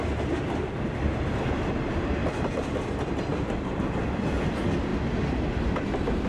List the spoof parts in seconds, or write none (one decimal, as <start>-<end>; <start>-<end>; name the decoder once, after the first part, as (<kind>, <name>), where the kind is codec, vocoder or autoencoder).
none